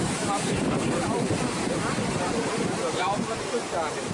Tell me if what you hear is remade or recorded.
remade